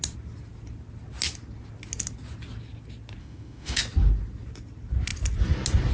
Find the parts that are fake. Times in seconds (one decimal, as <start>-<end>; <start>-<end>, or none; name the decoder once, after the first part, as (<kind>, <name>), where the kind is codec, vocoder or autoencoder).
3.2-3.8 (autoencoder, DAC-VAE)